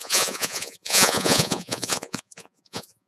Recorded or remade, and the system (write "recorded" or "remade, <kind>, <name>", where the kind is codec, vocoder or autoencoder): remade, vocoder, Vocos